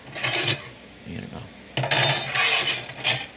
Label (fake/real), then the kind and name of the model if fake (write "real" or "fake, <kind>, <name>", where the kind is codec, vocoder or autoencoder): real